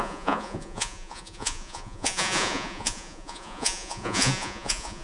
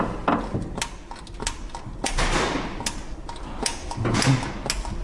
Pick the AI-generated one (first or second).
first